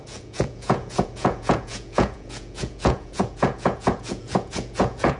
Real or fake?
fake